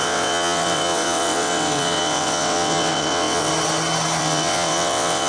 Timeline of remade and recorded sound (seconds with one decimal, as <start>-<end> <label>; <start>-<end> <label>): 0.0-3.5 remade; 3.5-4.2 recorded; 4.2-5.3 remade